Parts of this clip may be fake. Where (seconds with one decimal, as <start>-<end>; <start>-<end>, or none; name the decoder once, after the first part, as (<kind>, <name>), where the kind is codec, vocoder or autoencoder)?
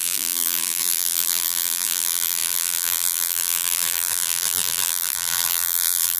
0.0-6.2 (vocoder, BigVGAN v2)